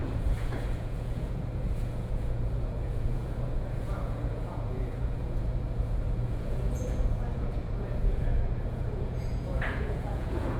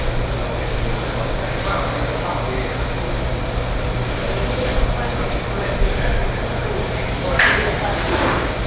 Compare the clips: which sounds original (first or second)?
second